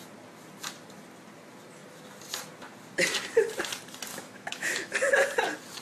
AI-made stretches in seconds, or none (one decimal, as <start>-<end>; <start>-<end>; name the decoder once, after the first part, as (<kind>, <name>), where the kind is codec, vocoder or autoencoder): 4.1-4.9 (autoencoder, DAC-VAE)